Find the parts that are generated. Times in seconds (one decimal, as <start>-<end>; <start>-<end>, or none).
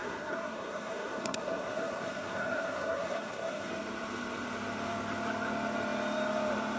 0.0-3.7